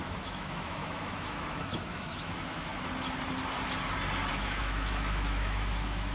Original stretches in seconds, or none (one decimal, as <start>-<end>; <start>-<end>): 2.7-4.3